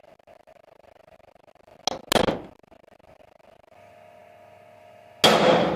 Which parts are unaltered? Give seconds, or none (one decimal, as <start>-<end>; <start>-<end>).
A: 0.0-5.8